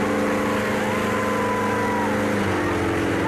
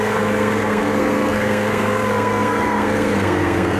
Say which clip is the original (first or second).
first